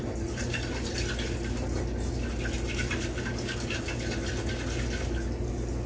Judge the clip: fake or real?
real